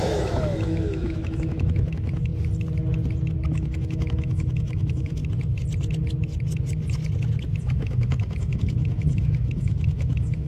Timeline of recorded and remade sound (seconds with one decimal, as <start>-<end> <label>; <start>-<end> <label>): 0.0-2.3 remade; 2.3-3.5 recorded; 3.5-5.2 remade; 5.2-7.6 recorded; 7.6-10.5 remade